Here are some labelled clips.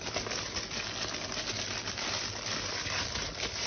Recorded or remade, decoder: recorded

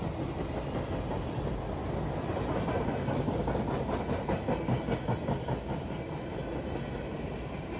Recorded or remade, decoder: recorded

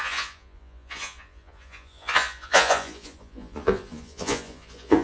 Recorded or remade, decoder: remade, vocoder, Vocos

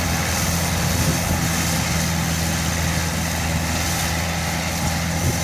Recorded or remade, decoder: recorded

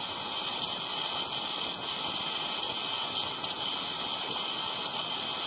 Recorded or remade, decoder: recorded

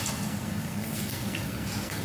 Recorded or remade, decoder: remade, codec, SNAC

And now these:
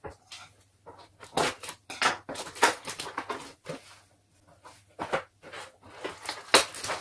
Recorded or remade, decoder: recorded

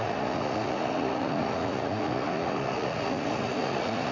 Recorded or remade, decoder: remade, vocoder, Vocos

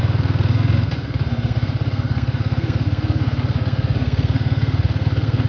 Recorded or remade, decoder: remade, codec, SNAC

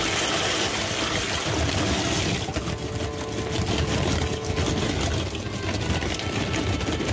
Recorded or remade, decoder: recorded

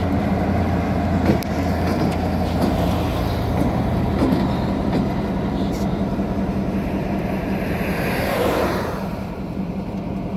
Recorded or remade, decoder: recorded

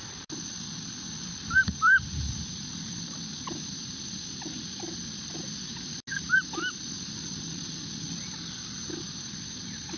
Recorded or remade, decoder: recorded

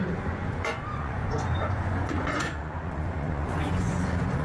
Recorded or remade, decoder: remade, vocoder, Vocos